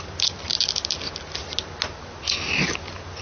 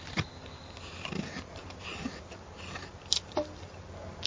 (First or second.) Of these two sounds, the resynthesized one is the second